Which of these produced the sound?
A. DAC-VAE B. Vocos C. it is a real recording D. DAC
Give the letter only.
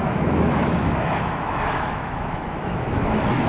A